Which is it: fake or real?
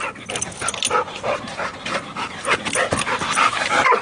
fake